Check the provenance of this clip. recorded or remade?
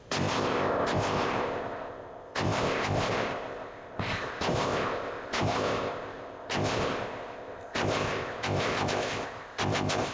remade